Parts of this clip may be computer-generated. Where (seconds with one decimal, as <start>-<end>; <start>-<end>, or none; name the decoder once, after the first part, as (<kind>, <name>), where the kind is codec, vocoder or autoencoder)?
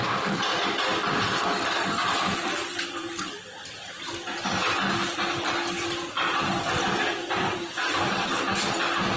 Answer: none